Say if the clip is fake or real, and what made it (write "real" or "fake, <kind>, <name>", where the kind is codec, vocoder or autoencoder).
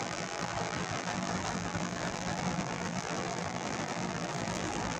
fake, vocoder, BigVGAN v2